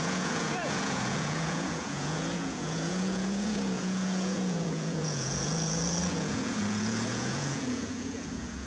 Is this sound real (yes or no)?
no